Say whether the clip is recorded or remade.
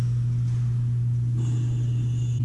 recorded